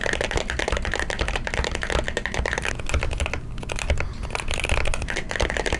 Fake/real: real